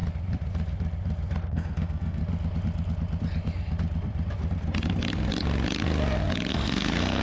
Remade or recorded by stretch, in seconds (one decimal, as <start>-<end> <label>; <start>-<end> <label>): 0.0-1.5 recorded; 1.5-2.2 remade; 2.2-6.5 recorded; 6.5-7.2 remade